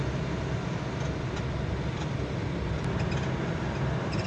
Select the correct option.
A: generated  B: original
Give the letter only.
B